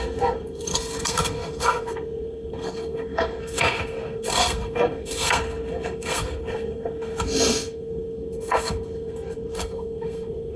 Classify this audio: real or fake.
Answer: fake